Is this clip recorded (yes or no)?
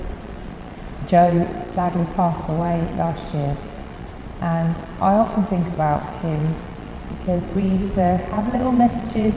no